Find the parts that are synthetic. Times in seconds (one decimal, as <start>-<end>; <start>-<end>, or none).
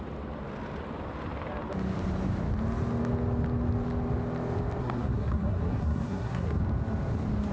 4.8-6.6